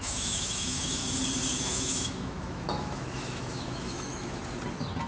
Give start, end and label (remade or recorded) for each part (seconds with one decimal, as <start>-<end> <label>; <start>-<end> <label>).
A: 0.0-1.0 remade; 1.0-1.6 recorded; 1.6-4.4 remade; 4.4-5.1 recorded